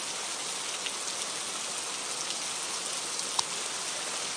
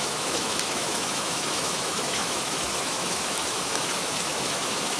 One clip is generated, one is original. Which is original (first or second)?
first